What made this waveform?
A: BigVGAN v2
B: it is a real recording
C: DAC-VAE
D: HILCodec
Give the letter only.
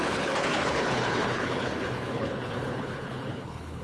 D